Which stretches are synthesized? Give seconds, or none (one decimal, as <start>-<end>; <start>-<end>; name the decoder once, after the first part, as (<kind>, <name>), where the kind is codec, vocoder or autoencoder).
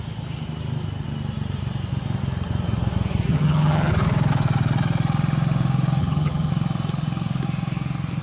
3.3-3.9 (vocoder, HiFi-GAN); 6.0-6.5